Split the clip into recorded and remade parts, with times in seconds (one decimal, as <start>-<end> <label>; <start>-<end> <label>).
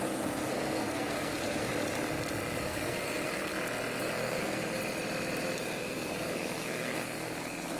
0.0-1.7 remade; 1.7-2.6 recorded; 2.6-3.5 remade; 3.5-4.0 recorded; 4.0-4.8 remade; 4.8-5.6 recorded; 5.6-7.8 remade